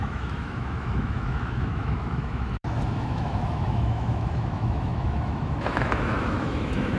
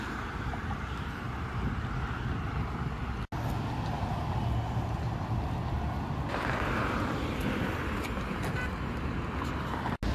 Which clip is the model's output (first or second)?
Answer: first